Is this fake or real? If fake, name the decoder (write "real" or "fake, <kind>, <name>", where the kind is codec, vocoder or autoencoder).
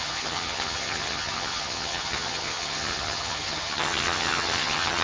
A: fake, vocoder, HiFi-GAN